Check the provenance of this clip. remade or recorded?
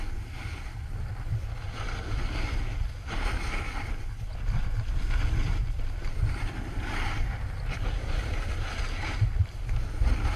recorded